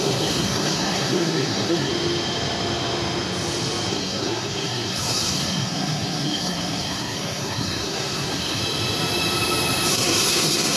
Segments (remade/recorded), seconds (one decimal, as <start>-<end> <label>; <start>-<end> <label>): 0.0-1.9 remade; 1.9-3.9 recorded; 3.9-8.6 remade; 8.6-9.9 recorded; 9.9-10.8 remade